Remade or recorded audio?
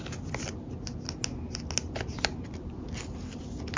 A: recorded